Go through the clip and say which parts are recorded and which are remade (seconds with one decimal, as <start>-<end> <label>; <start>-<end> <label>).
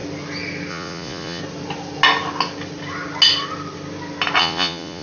0.0-0.7 recorded; 0.7-1.4 remade; 1.4-4.4 recorded; 4.4-5.0 remade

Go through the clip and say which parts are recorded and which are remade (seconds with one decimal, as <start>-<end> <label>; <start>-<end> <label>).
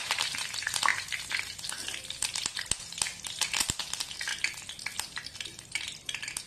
0.0-6.5 recorded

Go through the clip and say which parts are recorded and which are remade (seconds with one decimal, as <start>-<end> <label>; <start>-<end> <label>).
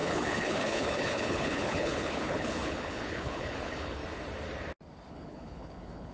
0.0-4.0 remade; 4.0-5.1 recorded; 5.1-6.1 remade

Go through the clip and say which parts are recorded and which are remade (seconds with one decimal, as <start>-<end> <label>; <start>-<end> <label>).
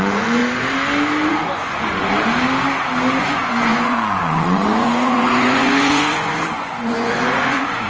0.0-0.4 remade; 0.4-1.3 recorded; 1.3-2.0 remade; 2.0-3.2 recorded; 3.2-7.9 remade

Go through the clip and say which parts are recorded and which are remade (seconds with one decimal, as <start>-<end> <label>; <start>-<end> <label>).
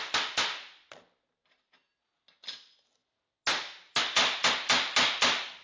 0.0-5.6 recorded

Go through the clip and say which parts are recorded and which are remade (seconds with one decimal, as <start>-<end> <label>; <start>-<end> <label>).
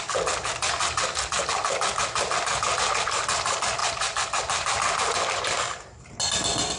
0.0-6.8 recorded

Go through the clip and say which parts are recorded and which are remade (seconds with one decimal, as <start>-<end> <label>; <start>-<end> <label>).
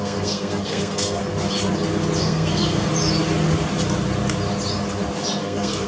0.0-1.2 remade; 1.2-2.2 recorded; 2.2-2.9 remade; 2.9-5.4 recorded; 5.4-5.9 remade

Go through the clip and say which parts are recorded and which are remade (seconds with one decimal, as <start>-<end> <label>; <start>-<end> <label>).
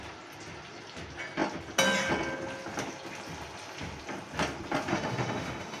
0.0-4.9 recorded; 4.9-5.8 remade